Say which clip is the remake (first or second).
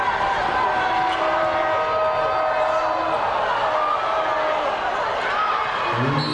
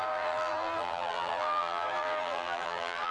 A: second